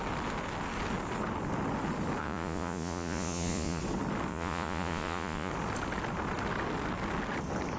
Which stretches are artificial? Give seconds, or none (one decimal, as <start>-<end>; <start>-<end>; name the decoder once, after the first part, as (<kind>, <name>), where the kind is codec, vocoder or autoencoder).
2.2-3.8 (vocoder, Vocos); 4.3-5.5